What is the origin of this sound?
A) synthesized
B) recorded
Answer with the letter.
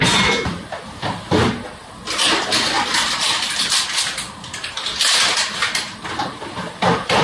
B